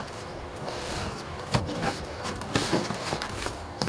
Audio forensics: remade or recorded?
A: remade